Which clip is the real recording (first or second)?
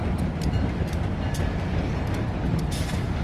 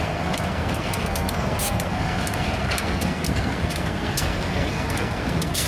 first